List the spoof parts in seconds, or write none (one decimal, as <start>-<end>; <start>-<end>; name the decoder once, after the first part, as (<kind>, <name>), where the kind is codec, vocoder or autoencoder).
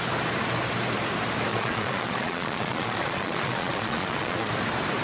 1.5-4.5 (vocoder, Vocos)